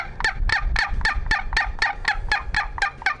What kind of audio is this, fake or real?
real